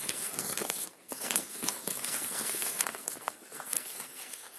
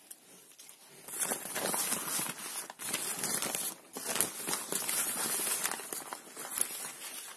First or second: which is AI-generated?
first